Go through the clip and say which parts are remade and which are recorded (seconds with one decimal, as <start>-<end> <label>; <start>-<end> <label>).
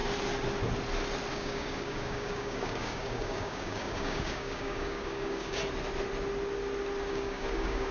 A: 0.0-1.3 recorded; 1.3-5.6 remade; 5.6-7.1 recorded; 7.1-7.9 remade